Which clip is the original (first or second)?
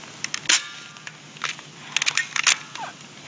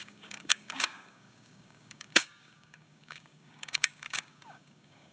first